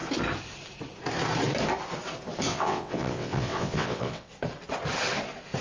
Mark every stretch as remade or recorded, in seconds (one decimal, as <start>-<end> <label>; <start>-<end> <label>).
0.0-2.5 recorded; 2.5-4.3 remade; 4.3-5.6 recorded